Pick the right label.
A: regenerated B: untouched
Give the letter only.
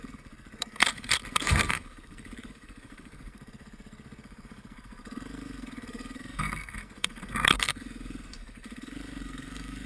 A